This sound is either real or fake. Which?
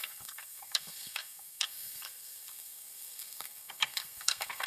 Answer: fake